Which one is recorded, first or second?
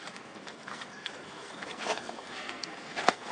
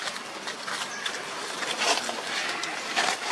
second